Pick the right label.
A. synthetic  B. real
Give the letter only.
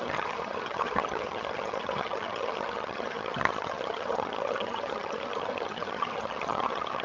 A